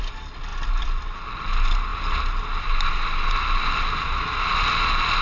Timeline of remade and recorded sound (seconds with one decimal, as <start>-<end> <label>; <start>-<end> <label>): 0.0-5.2 recorded